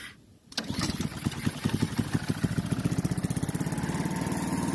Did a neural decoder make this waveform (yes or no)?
no